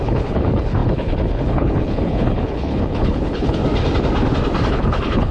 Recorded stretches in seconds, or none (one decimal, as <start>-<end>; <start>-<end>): 3.6-4.7